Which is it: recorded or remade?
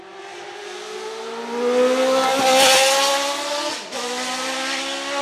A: recorded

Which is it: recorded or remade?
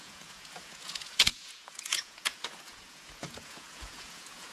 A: remade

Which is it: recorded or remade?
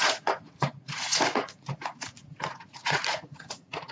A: remade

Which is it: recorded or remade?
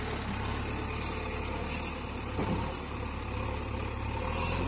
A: recorded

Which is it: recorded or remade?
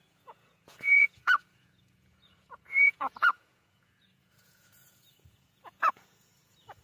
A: remade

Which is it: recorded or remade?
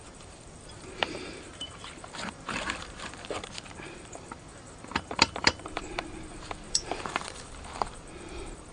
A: remade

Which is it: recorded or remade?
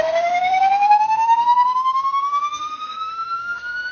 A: remade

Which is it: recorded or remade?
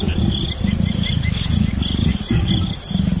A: recorded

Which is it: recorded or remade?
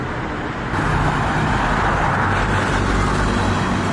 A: recorded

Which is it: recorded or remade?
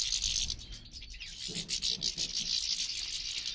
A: recorded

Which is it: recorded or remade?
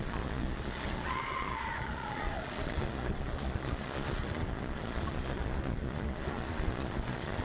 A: remade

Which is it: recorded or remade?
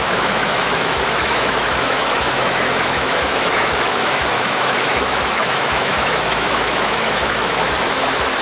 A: remade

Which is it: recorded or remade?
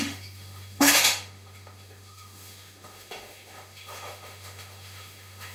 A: remade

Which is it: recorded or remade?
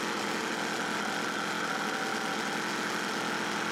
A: recorded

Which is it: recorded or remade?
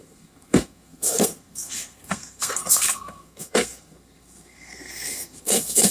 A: remade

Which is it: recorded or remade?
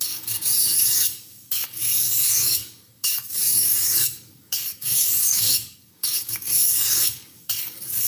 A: remade